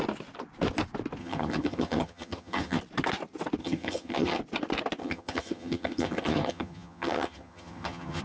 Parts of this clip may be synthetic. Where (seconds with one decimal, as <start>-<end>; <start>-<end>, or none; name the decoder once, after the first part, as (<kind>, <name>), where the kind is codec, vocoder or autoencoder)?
1.2-2.8 (vocoder, HiFi-GAN); 3.6-4.4; 5.0-8.2